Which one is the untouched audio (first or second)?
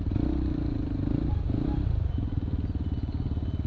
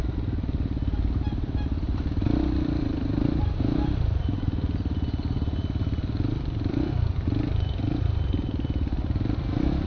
first